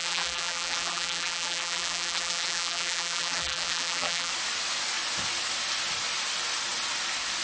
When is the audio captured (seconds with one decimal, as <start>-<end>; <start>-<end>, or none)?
4.3-7.4